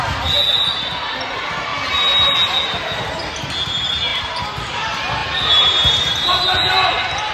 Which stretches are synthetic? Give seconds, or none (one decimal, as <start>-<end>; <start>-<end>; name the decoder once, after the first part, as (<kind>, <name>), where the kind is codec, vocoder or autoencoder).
none